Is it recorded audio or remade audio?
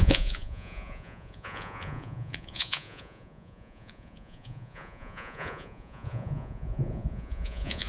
remade